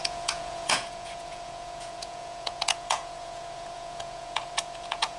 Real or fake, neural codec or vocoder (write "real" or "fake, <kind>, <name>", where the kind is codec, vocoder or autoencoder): fake, vocoder, Vocos